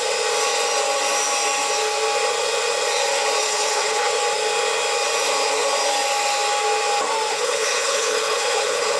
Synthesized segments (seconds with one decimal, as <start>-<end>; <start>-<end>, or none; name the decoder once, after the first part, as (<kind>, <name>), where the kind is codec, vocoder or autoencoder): 3.4-4.1 (codec, HILCodec); 7.3-9.0